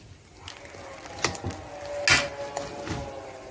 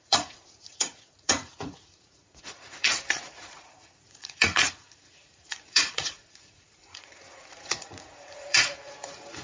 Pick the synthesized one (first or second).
second